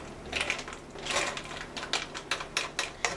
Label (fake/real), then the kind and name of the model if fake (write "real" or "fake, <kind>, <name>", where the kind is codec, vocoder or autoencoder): real